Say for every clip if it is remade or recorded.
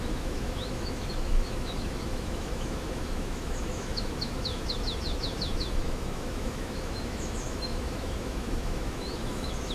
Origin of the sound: remade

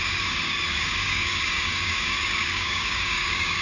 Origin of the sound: remade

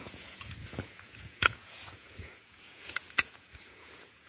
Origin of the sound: remade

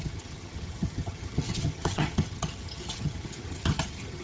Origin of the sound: remade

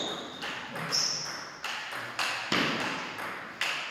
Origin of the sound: recorded